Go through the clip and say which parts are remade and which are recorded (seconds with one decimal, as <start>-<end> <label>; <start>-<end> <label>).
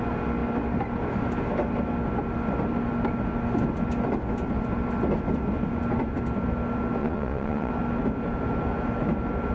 0.0-7.0 recorded; 7.0-7.7 remade; 7.7-9.5 recorded